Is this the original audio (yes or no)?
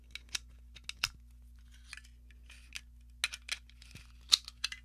yes